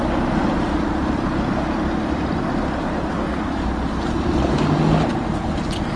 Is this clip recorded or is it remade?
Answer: recorded